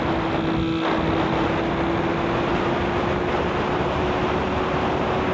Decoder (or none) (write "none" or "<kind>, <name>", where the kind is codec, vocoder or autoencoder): none